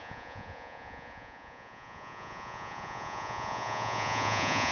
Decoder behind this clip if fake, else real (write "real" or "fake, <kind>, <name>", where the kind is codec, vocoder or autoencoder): fake, vocoder, Vocos